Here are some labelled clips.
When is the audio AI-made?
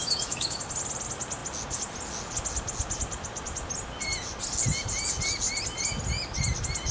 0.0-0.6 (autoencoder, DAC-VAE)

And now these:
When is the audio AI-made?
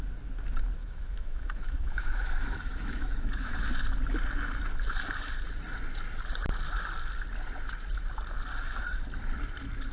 0.8-3.6 (autoencoder, DAC-VAE)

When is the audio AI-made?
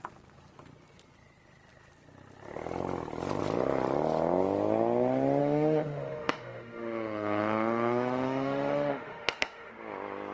5.4-9.7 (autoencoder, DAC-VAE)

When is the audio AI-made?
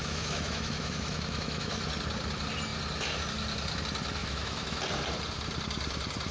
0.0-1.8 (autoencoder, DAC-VAE); 4.2-4.8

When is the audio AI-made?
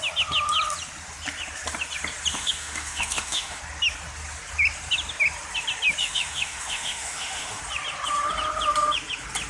2.3-3.6 (autoencoder, DAC-VAE); 6.0-7.6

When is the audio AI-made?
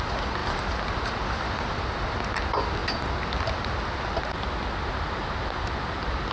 none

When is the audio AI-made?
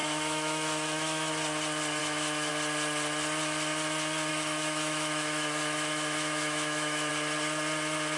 0.0-1.3 (autoencoder, DAC-VAE); 2.0-2.5; 4.3-7.1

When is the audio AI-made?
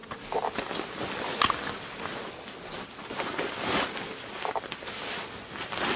none